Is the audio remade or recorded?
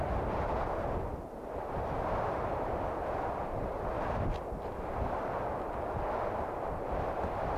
recorded